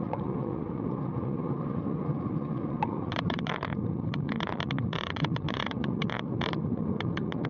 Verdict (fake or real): fake